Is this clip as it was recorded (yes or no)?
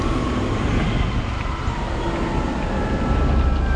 yes